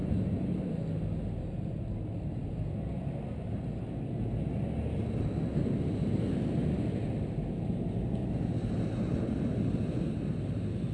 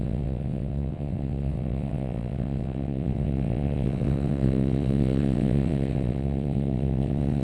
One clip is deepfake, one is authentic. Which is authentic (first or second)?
first